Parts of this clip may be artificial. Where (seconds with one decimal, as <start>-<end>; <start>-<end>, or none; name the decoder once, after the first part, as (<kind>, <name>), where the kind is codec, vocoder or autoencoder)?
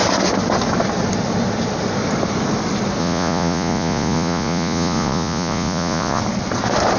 3.0-6.2 (vocoder, Vocos)